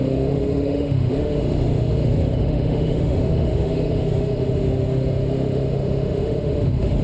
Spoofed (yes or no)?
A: yes